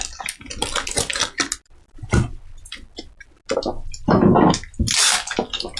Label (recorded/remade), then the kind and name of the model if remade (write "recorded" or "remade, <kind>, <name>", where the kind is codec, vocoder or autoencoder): recorded